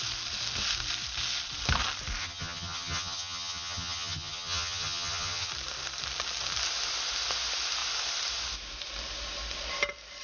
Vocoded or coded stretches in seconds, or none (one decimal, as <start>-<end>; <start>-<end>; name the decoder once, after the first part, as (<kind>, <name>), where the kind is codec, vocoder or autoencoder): 2.2-5.5 (vocoder, HiFi-GAN)